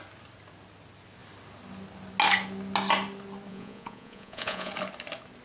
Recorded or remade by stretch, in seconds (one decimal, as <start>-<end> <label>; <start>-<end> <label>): 0.0-3.5 recorded; 3.5-4.7 remade; 4.7-5.4 recorded